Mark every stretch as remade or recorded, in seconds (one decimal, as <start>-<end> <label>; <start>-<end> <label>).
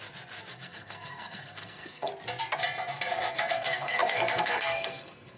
0.0-0.5 recorded; 0.5-2.1 remade; 2.1-3.1 recorded; 3.1-5.4 remade